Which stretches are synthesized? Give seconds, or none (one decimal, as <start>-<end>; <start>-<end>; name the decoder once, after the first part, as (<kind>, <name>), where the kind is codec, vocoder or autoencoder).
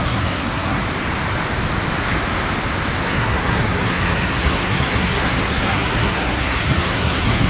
0.0-0.8 (codec, SNAC); 3.0-7.5